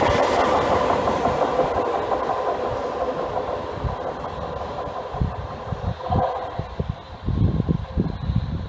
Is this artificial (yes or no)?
no